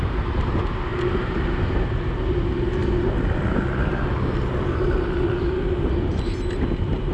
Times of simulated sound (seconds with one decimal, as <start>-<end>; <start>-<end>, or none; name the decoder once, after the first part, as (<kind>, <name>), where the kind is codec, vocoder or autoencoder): none